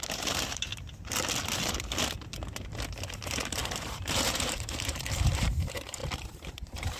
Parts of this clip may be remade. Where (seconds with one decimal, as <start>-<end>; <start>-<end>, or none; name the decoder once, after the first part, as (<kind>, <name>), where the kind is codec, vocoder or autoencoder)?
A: 0.0-0.7 (vocoder, BigVGAN v2); 3.1-7.0